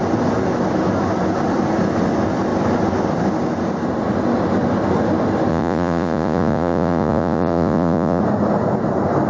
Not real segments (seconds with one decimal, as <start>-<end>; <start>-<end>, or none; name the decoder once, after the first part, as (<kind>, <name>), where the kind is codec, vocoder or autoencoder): 5.5-8.2 (vocoder, Vocos)